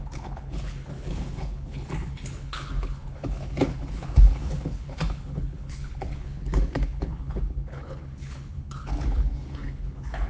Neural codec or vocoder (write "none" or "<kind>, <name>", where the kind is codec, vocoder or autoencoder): codec, HILCodec